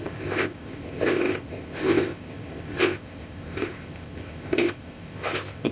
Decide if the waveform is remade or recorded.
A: remade